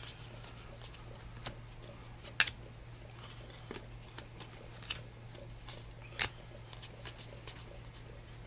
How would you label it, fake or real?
real